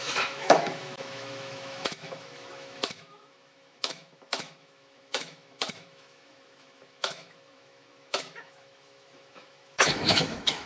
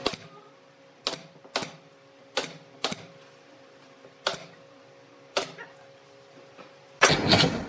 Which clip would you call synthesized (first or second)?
first